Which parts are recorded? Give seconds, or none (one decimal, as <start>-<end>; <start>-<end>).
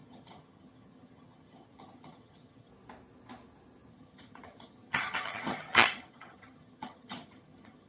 2.7-3.9